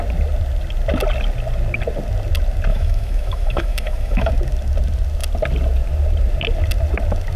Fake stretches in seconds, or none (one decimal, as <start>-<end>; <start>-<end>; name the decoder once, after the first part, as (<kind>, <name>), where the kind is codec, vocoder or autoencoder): 2.7-4.3 (autoencoder, DAC-VAE)

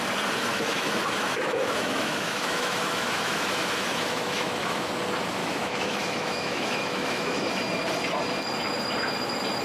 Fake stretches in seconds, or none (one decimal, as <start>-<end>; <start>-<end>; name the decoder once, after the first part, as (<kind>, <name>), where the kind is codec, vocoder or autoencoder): 0.5-4.9 (autoencoder, DAC-VAE); 5.4-7.5

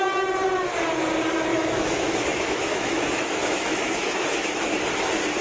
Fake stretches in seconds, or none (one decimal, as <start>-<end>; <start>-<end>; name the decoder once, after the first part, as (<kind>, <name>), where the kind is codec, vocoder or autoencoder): 1.5-4.7 (autoencoder, DAC-VAE)

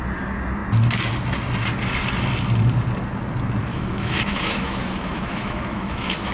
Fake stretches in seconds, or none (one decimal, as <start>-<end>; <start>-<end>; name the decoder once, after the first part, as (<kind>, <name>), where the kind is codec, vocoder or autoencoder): 3.7-6.3 (autoencoder, DAC-VAE)

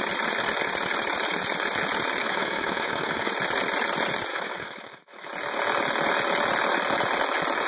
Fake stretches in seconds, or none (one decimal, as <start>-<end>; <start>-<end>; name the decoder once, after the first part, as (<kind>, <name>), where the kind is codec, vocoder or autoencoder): 2.2-3.3 (autoencoder, DAC-VAE); 4.3-5.3

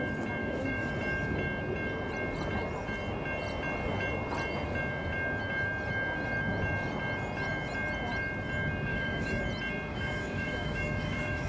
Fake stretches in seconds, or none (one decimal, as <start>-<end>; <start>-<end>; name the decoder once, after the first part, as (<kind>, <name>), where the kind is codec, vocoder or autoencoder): 0.4-0.9 (autoencoder, DAC-VAE); 8.9-9.4; 9.9-11.5

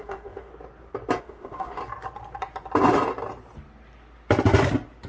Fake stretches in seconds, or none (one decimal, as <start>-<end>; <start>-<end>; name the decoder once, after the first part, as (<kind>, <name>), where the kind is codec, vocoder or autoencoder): 0.0-0.5 (autoencoder, DAC-VAE); 1.2-1.8